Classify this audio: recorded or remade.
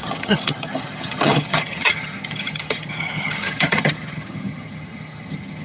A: remade